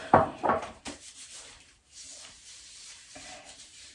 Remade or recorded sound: remade